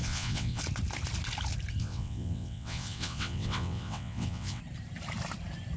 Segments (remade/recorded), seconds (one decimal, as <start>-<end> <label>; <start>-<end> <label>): 0.0-0.6 remade; 0.6-1.8 recorded; 1.8-4.6 remade; 4.6-5.8 recorded